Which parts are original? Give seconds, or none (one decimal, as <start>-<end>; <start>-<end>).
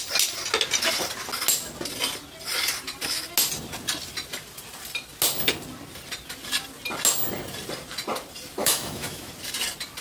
0.0-8.6; 9.3-10.0